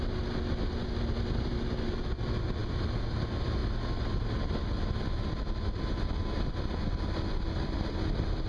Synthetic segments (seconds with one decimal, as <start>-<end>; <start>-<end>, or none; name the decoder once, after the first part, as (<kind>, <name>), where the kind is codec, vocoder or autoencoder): none